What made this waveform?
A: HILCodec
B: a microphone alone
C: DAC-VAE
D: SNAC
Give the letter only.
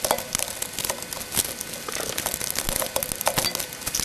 B